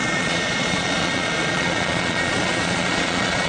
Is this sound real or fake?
fake